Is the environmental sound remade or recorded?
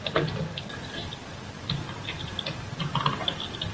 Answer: recorded